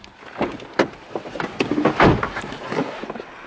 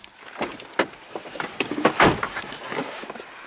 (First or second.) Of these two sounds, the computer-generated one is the second